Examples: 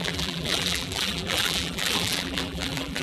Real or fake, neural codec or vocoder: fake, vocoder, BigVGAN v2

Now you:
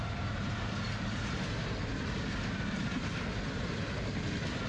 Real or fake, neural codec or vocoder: real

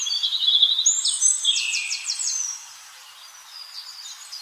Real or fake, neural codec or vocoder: real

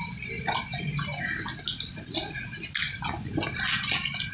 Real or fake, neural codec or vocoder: real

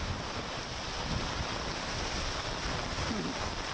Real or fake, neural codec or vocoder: real